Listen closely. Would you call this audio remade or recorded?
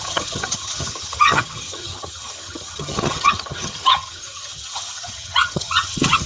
remade